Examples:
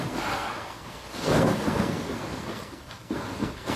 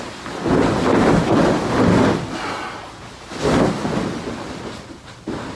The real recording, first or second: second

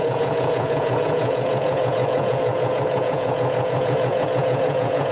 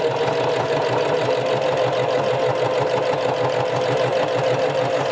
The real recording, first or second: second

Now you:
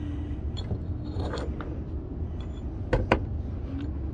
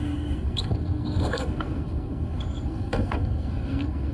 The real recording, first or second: first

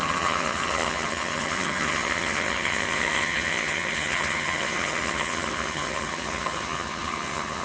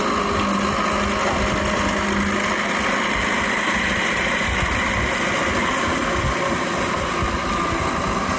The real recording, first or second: second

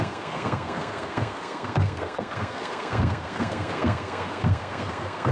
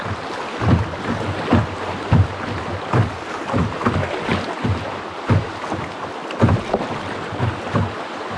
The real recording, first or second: second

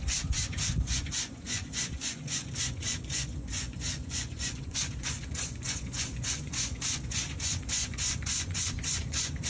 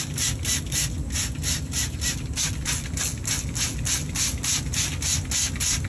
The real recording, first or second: second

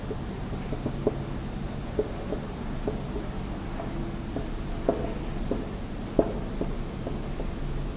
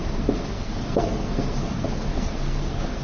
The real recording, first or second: first